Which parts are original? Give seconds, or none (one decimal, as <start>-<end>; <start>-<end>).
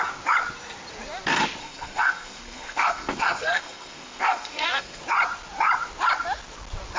0.0-1.6; 5.0-7.0